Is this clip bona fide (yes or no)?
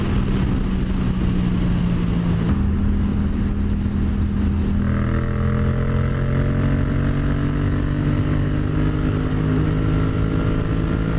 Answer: yes